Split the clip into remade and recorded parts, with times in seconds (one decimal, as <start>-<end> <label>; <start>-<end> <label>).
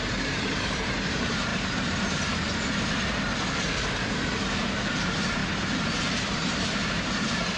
0.0-1.5 remade; 1.5-5.0 recorded; 5.0-5.4 remade; 5.4-6.0 recorded; 6.0-6.8 remade; 6.8-7.6 recorded